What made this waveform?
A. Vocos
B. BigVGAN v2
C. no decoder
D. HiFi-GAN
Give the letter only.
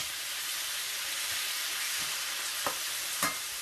C